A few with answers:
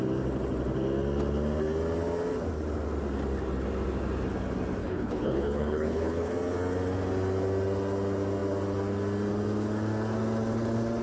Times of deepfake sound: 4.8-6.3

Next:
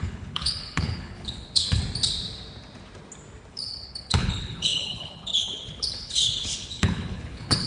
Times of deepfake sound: 0.0-1.8; 3.5-7.7

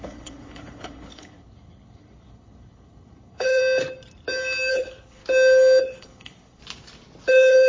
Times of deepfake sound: 0.0-3.6; 4.7-5.2; 5.8-6.6; 7.3-7.7

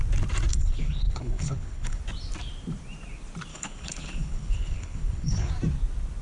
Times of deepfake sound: 0.5-2.0; 3.5-5.5

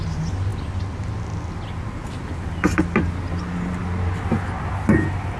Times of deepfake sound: none